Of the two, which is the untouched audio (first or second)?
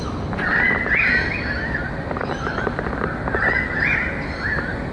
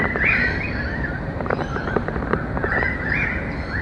first